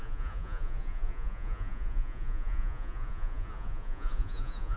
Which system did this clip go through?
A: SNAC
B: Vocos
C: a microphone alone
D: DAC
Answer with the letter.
B